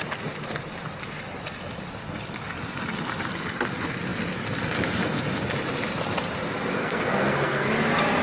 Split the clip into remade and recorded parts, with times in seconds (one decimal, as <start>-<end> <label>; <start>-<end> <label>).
0.0-6.8 recorded; 6.8-7.7 remade; 7.7-8.2 recorded